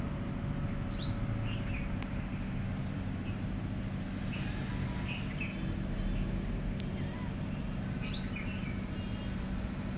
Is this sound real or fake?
real